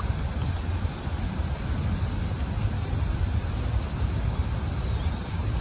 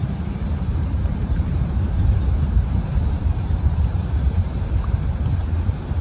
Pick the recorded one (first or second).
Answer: first